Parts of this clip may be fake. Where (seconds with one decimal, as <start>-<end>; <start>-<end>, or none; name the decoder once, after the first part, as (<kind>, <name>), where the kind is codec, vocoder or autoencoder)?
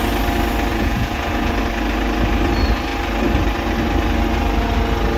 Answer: 0.7-1.5 (vocoder, Vocos)